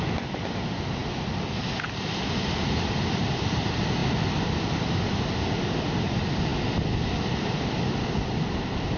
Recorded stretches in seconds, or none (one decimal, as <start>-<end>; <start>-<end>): 0.0-9.0